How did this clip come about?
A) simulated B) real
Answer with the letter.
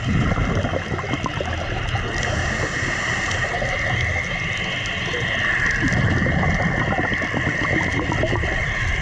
B